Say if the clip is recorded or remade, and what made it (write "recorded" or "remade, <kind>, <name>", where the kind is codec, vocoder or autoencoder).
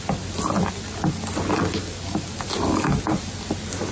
recorded